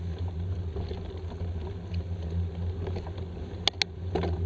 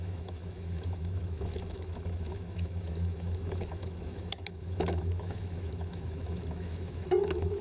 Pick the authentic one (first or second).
first